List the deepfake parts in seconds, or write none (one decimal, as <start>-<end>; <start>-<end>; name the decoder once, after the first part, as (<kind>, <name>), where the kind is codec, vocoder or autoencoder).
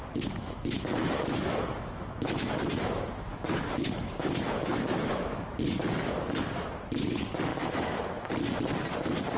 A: 0.0-2.7 (autoencoder, DAC-VAE); 3.3-5.5; 7.5-8.3